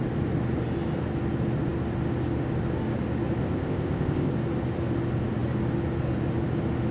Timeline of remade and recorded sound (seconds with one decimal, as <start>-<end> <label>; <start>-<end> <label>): 0.0-3.4 recorded; 3.4-4.3 remade; 4.3-6.9 recorded